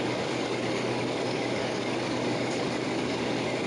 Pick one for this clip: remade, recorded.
remade